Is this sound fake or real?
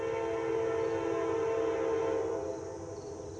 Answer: real